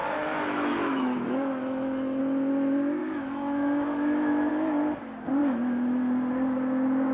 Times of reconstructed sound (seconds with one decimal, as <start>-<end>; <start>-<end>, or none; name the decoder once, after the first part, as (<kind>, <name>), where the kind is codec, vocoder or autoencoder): 0.0-2.2 (autoencoder, DAC-VAE); 3.0-4.5